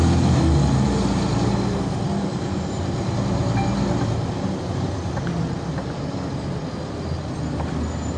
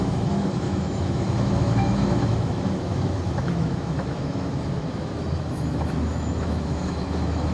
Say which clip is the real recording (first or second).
first